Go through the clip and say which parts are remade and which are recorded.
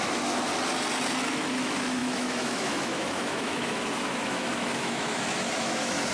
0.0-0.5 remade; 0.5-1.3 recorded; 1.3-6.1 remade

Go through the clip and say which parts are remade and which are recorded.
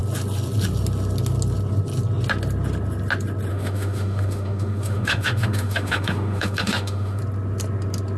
0.0-3.5 recorded; 3.5-7.2 remade; 7.2-8.2 recorded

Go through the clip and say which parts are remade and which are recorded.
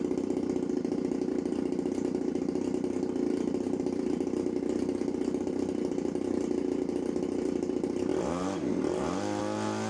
0.0-9.9 recorded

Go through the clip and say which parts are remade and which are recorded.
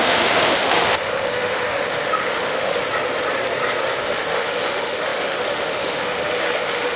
0.0-2.8 remade; 2.8-4.0 recorded; 4.0-7.0 remade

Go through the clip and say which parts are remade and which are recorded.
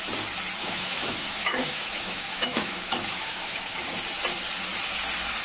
0.0-0.6 recorded; 0.6-3.8 remade; 3.8-5.4 recorded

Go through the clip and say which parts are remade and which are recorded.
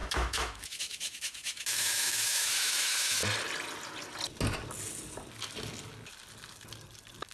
0.0-3.2 remade; 3.2-7.3 recorded